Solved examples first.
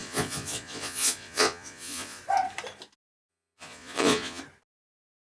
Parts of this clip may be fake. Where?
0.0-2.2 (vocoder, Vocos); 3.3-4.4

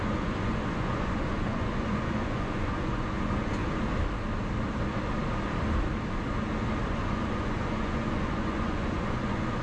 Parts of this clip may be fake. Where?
0.0-3.6 (vocoder, Vocos); 6.8-9.6

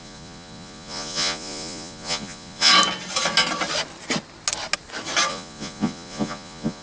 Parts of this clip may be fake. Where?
0.0-2.7 (vocoder, Vocos); 5.3-6.8

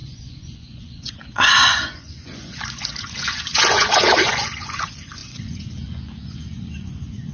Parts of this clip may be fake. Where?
0.0-7.3 (vocoder, Vocos)